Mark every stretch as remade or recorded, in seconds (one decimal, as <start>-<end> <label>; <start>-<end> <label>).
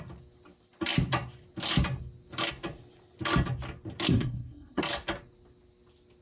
0.0-4.1 recorded; 4.1-4.8 remade; 4.8-6.2 recorded